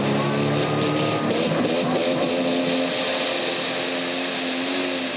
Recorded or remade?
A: recorded